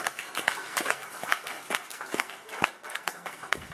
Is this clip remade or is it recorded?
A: remade